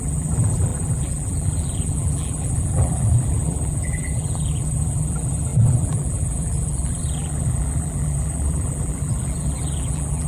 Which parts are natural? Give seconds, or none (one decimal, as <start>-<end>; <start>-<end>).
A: none